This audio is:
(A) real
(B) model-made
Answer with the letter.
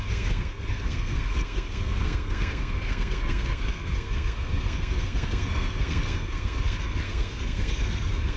B